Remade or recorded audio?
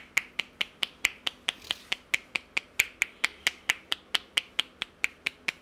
recorded